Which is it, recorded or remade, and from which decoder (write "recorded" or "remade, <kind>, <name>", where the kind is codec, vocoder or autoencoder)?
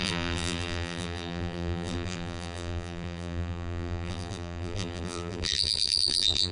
remade, vocoder, BigVGAN v2